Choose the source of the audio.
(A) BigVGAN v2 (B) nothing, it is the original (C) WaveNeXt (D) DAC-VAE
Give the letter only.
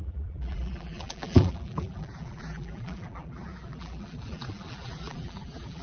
A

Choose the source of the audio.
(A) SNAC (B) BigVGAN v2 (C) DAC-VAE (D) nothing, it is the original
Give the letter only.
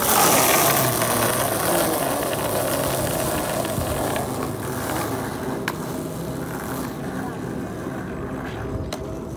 D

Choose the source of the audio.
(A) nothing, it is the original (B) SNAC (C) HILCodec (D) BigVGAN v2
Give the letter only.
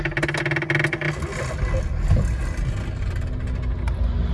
A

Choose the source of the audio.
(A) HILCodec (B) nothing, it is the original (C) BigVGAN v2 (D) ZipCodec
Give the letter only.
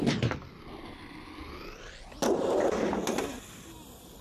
B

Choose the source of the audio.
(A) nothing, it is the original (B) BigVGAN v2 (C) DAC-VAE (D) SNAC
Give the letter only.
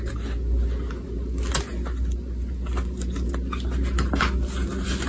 A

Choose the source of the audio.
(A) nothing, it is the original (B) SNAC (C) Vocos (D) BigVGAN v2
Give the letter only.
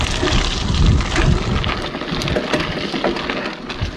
A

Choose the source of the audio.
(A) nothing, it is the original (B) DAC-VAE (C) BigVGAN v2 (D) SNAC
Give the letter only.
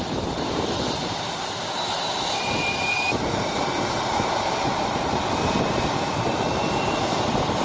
C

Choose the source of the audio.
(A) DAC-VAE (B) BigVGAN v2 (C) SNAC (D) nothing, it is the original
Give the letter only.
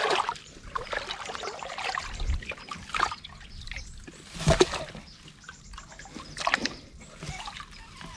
D